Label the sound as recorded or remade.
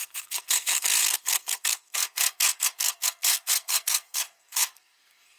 remade